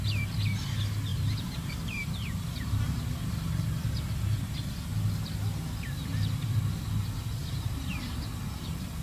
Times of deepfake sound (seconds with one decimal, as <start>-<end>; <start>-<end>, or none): 1.1-2.8